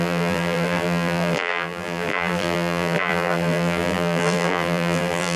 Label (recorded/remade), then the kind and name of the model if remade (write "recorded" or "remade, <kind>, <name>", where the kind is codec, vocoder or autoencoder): remade, vocoder, BigVGAN v2